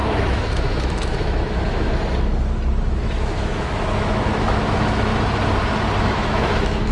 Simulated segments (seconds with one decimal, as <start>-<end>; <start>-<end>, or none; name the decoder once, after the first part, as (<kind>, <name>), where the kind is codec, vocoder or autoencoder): 0.0-1.9 (autoencoder, DAC-VAE); 3.2-5.1; 6.0-6.9